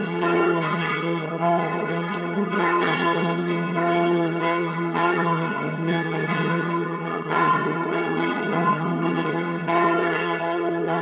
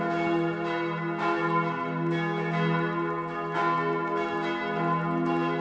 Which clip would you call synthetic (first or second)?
first